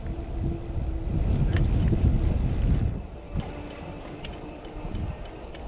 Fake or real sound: real